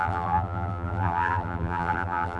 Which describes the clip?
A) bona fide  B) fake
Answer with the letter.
B